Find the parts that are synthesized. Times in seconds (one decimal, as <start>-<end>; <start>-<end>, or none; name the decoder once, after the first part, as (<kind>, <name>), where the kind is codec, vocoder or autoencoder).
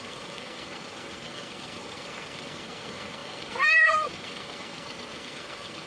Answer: 0.0-5.9 (codec, SNAC)